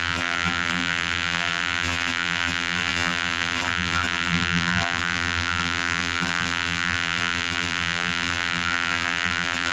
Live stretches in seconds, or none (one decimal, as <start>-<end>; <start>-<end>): none